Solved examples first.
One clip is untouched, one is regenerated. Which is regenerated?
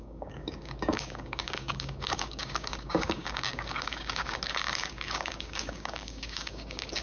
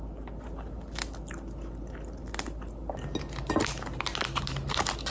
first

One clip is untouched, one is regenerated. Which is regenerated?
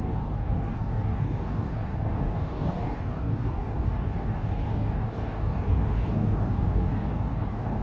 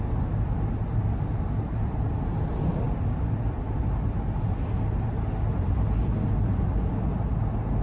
first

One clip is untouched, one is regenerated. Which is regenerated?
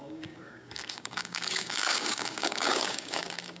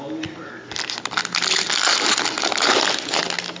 first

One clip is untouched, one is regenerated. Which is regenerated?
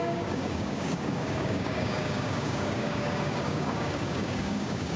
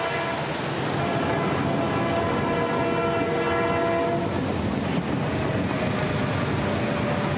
first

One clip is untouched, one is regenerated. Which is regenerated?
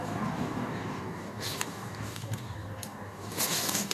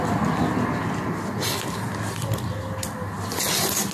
first